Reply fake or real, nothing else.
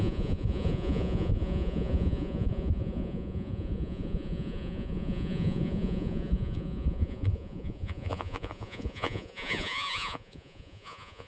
fake